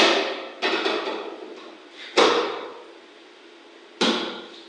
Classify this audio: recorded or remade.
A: recorded